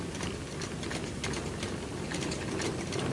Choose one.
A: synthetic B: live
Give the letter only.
B